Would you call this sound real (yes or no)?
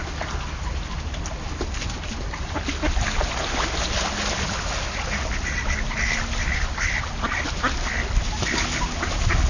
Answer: yes